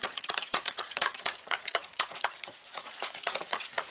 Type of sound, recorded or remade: remade